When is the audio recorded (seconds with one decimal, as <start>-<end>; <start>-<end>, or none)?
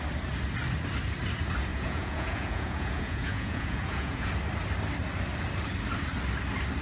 0.0-1.7; 4.3-6.8